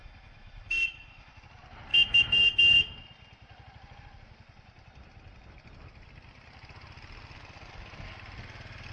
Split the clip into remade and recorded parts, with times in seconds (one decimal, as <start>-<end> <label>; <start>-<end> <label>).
0.0-1.4 remade; 1.4-1.9 recorded; 1.9-2.9 remade; 2.9-8.9 recorded